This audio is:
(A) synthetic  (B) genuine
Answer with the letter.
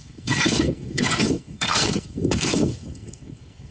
A